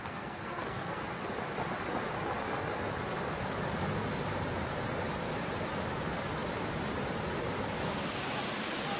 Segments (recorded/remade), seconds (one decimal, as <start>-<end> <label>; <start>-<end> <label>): 0.0-1.0 remade; 1.0-9.0 recorded